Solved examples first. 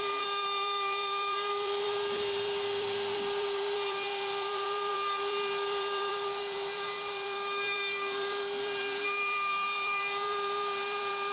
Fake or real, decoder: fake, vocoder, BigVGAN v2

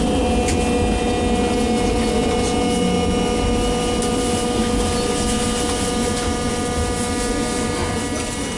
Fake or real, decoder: real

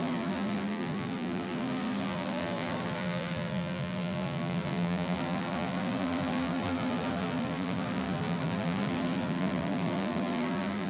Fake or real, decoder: fake, vocoder, BigVGAN v2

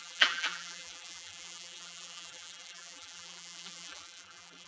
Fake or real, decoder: fake, vocoder, BigVGAN v2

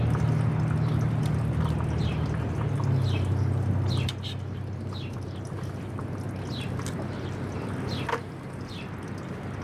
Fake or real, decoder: real